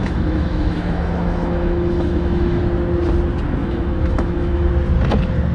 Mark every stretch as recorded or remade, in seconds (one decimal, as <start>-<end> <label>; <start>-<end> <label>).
0.0-2.6 remade; 2.6-3.6 recorded; 3.6-4.7 remade; 4.7-5.5 recorded